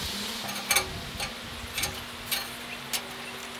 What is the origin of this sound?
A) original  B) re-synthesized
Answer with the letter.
A